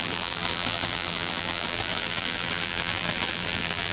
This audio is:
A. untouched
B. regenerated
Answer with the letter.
B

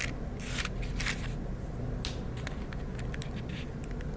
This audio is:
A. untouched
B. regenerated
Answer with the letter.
A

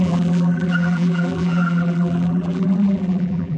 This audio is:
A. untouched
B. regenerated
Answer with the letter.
B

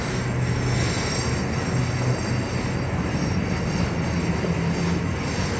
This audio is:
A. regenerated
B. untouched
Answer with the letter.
B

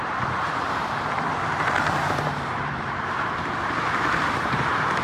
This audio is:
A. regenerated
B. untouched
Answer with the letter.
A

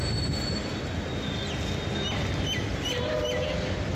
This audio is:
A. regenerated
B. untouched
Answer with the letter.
B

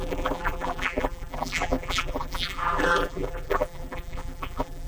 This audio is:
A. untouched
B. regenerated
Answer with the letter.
B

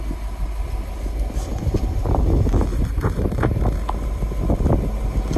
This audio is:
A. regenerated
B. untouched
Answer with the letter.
B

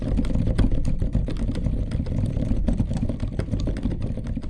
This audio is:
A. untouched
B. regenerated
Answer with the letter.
A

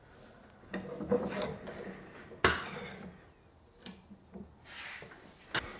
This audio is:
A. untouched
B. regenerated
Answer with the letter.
A